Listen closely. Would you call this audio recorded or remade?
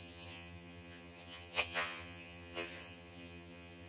remade